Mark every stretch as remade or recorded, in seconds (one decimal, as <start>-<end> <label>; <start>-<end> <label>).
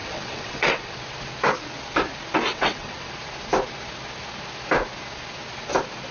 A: 0.0-1.0 remade; 1.0-2.5 recorded; 2.5-3.1 remade; 3.1-6.1 recorded